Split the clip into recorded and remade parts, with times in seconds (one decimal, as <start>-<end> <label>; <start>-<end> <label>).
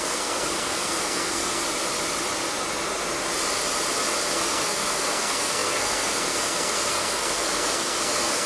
0.0-1.6 remade; 1.6-4.3 recorded; 4.3-8.5 remade